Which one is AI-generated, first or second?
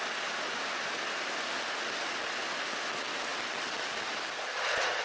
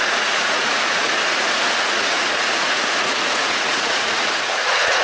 second